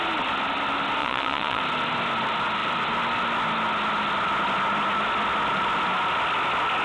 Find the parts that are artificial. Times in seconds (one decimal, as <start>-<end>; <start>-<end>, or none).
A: 1.0-1.6